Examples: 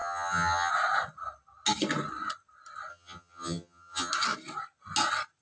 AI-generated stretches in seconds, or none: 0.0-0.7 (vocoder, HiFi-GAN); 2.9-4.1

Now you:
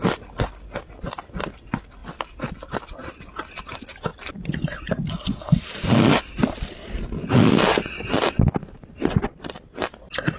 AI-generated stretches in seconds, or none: none